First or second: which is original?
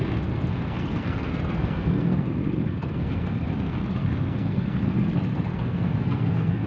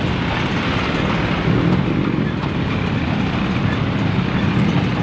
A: second